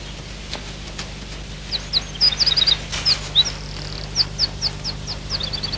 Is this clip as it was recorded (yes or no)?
yes